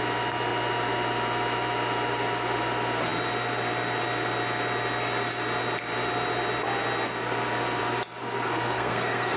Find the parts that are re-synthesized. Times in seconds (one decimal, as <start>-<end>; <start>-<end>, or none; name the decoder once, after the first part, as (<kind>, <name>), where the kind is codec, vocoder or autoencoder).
8.2-9.4 (codec, SNAC)